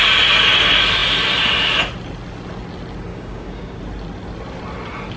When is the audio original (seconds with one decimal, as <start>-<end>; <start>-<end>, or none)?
0.0-3.1; 3.8-5.2